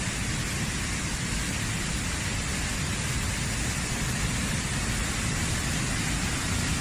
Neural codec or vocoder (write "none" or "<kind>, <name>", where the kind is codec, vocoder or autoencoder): none